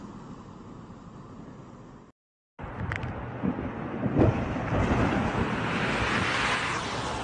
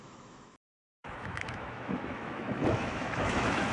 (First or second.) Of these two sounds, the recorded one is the first